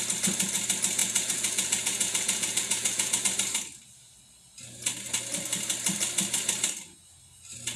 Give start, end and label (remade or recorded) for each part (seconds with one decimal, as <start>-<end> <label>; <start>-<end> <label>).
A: 0.0-1.0 recorded; 1.0-3.2 remade; 3.2-7.8 recorded